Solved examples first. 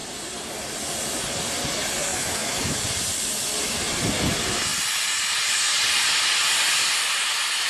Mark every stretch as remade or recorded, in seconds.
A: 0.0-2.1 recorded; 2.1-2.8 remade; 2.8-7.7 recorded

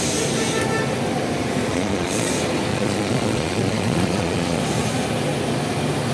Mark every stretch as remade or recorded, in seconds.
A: 0.0-1.7 recorded; 1.7-2.3 remade; 2.3-2.7 recorded; 2.7-4.6 remade; 4.6-6.1 recorded

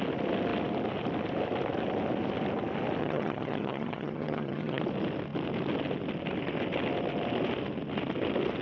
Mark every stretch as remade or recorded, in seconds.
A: 0.0-3.0 recorded; 3.0-4.8 remade; 4.8-8.6 recorded

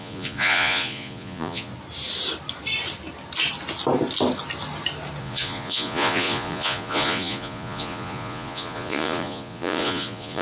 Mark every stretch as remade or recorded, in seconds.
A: 0.0-1.7 remade; 1.7-5.2 recorded; 5.2-10.4 remade

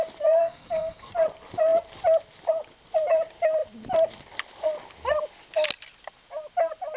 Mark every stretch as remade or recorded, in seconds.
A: 0.0-0.4 recorded; 0.4-1.1 remade; 1.1-7.0 recorded

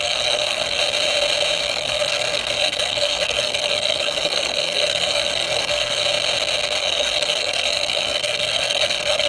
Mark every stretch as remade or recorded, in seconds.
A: 0.0-0.8 remade; 0.8-1.6 recorded; 1.6-6.0 remade; 6.0-6.8 recorded; 6.8-9.3 remade

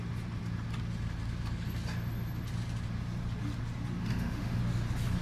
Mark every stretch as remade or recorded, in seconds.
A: 0.0-4.0 recorded; 4.0-4.6 remade; 4.6-5.2 recorded

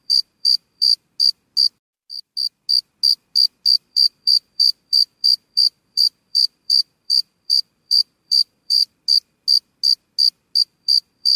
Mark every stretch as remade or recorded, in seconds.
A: 0.0-0.9 remade; 0.9-3.9 recorded; 3.9-8.8 remade; 8.8-10.6 recorded; 10.6-11.4 remade